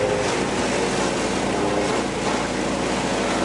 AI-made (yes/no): no